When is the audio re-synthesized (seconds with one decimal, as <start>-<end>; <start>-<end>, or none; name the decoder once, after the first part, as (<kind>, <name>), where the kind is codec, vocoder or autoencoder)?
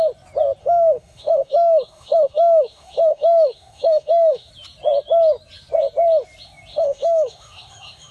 0.6-4.5 (autoencoder, DAC-VAE); 6.7-8.1